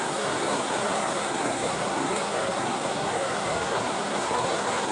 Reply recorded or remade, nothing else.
remade